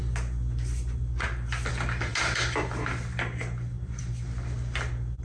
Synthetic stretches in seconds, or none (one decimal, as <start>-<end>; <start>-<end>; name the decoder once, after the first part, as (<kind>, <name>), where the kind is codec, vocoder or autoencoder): none